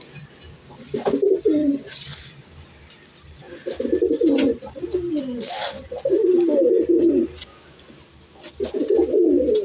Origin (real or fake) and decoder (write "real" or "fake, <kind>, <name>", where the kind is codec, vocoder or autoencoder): real